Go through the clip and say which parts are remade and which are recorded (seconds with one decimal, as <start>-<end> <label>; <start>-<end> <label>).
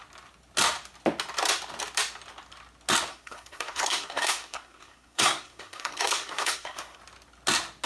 0.0-3.1 recorded; 3.1-7.0 remade; 7.0-7.9 recorded